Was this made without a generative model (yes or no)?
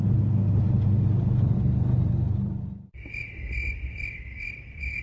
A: yes